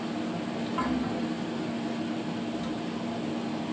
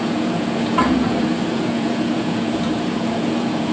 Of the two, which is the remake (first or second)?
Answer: second